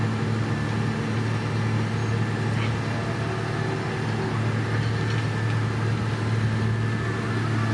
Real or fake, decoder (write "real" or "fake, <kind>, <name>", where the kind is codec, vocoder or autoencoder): real